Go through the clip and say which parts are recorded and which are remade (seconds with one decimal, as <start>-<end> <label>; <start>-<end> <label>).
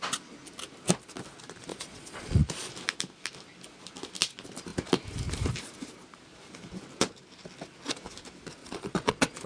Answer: 0.0-1.7 recorded; 1.7-2.7 remade; 2.7-8.6 recorded; 8.6-9.5 remade